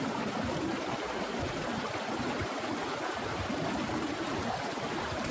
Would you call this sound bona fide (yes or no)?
yes